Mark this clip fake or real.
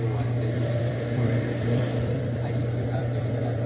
fake